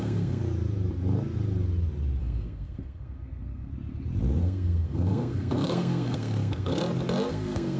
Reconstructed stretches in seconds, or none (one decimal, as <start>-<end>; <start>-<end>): 0.0-0.4; 2.2-3.7; 4.4-6.8; 7.3-7.8